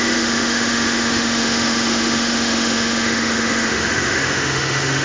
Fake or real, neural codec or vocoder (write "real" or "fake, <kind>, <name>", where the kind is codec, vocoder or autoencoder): fake, autoencoder, DAC-VAE